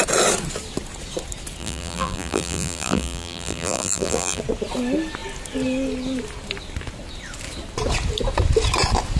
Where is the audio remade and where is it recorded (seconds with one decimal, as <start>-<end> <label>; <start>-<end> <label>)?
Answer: 0.0-1.6 recorded; 1.6-4.4 remade; 4.4-9.2 recorded